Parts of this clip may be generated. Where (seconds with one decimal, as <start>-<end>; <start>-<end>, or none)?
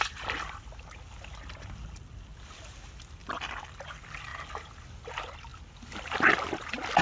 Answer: 0.0-4.3; 5.1-5.5; 6.4-7.0